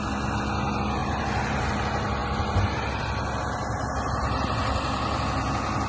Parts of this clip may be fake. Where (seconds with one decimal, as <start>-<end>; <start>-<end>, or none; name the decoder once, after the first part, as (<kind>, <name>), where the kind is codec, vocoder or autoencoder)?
1.0-1.7 (vocoder, BigVGAN v2)